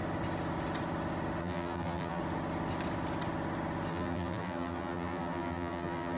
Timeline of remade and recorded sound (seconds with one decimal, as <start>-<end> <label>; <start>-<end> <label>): 0.0-1.4 recorded; 1.4-2.2 remade; 2.2-3.9 recorded; 3.9-6.2 remade